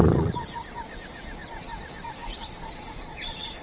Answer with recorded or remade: remade